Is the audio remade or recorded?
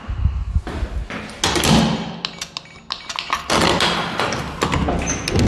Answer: recorded